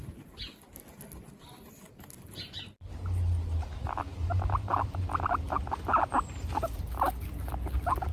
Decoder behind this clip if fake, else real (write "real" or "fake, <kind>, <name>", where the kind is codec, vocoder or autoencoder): real